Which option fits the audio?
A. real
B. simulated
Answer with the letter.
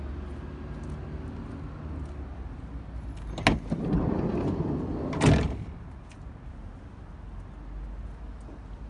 A